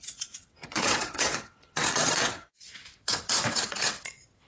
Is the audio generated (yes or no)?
yes